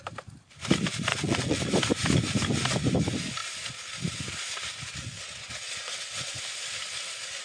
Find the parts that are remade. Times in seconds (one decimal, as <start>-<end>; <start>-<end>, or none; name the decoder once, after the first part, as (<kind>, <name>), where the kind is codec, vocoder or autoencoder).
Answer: 1.1-1.6 (vocoder, WaveNeXt); 5.4-6.4